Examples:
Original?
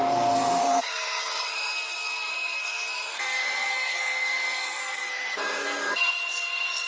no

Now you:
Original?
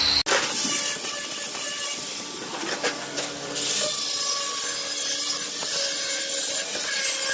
yes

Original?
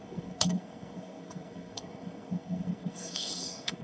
no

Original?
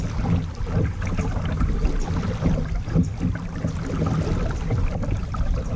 yes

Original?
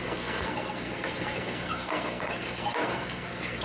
no